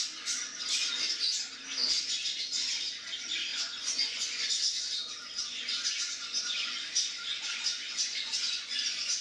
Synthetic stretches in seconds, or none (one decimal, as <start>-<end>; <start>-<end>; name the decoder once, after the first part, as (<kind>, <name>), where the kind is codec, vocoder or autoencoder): 3.5-4.6 (vocoder, Vocos); 5.5-9.2